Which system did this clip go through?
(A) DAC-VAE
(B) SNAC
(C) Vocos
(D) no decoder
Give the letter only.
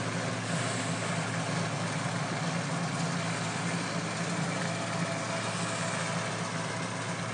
D